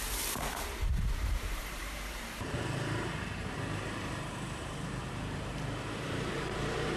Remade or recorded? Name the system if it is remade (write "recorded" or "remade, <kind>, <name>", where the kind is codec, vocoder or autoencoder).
remade, vocoder, BigVGAN v2